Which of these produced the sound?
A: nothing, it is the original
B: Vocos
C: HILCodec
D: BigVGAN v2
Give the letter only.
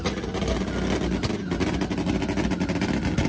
A